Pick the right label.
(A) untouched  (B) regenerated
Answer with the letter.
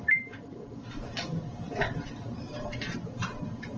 B